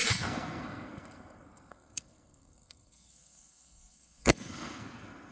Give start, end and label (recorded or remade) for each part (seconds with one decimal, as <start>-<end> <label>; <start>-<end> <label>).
0.0-5.3 remade